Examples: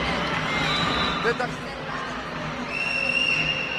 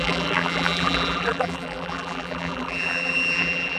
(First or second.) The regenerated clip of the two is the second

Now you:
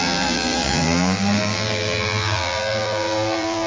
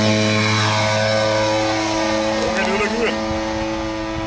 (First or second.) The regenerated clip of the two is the first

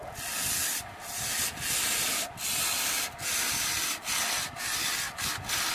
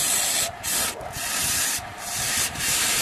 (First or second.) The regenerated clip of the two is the second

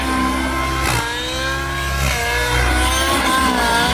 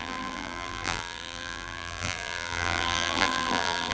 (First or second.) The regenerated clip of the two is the second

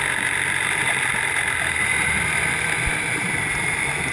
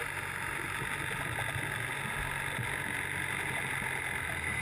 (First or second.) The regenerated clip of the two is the first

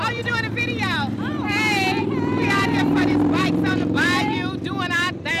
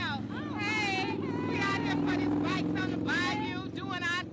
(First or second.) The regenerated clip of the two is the first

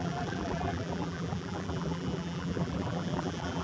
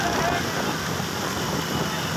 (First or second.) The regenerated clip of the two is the first